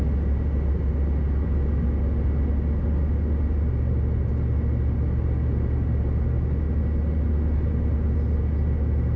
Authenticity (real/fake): real